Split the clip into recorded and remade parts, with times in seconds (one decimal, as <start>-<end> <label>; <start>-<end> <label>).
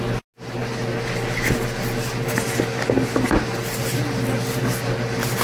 0.0-5.4 recorded